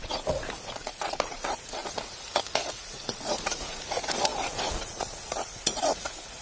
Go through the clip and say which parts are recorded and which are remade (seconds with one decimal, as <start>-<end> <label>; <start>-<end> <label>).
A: 0.0-6.4 remade